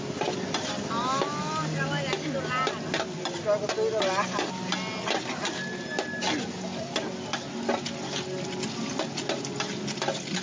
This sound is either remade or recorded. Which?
recorded